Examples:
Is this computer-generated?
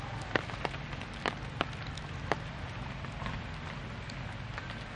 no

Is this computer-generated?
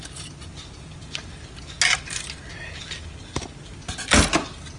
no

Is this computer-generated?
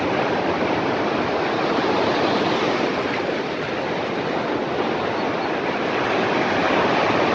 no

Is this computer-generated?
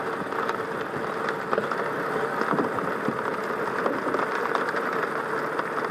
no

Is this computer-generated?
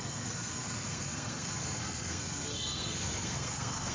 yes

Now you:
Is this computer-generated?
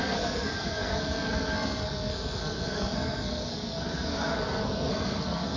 yes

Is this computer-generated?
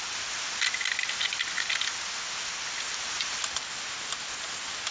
no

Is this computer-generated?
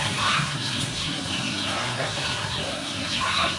yes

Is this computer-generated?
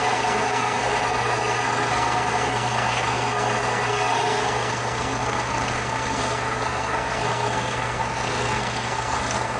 yes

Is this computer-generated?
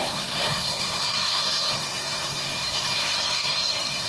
yes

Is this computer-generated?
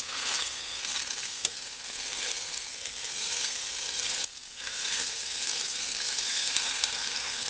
yes